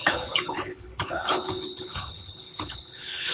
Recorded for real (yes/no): no